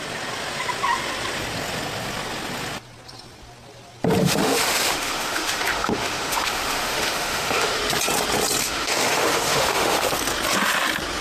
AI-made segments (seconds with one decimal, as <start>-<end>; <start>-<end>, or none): 4.2-7.8; 8.6-10.1